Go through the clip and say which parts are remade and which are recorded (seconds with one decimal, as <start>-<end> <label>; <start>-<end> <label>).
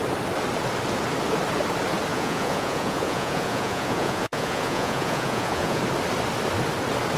0.0-2.1 recorded; 2.1-5.8 remade; 5.8-7.2 recorded